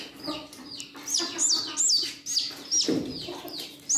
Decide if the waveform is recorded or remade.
recorded